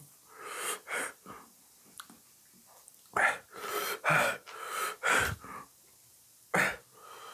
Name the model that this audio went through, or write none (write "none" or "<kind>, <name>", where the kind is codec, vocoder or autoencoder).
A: none